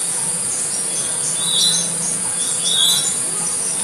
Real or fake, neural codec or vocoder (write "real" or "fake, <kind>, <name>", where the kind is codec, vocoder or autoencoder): fake, vocoder, Vocos